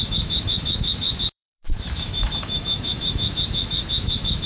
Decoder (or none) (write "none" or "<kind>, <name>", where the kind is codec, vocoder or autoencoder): autoencoder, DAC-VAE